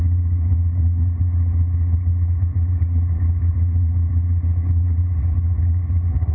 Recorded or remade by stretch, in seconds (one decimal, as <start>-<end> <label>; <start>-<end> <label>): 0.0-6.3 remade